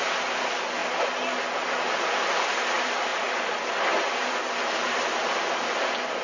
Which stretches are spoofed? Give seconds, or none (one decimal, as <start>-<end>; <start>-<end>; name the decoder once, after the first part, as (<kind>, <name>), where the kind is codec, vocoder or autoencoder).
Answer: none